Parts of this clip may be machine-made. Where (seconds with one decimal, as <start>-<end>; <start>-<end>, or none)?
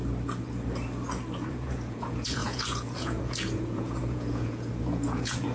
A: 1.5-5.5